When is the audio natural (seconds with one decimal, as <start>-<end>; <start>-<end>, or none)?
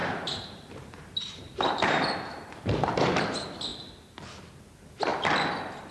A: 3.2-5.9